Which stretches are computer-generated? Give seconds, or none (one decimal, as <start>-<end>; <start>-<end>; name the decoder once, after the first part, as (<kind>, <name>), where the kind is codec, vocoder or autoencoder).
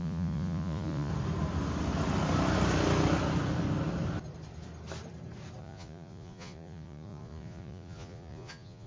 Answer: 0.0-1.1 (vocoder, Vocos); 5.6-8.9